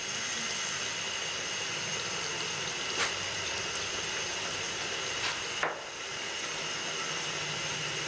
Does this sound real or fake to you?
real